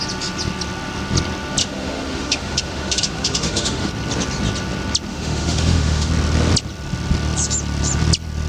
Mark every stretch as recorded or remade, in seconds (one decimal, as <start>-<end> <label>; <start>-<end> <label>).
0.0-1.6 recorded; 1.6-3.9 remade; 3.9-5.1 recorded; 5.1-6.1 remade; 6.1-8.5 recorded